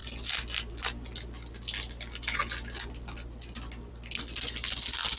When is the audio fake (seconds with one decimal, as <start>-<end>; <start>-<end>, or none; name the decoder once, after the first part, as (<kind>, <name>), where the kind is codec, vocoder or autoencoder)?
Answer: none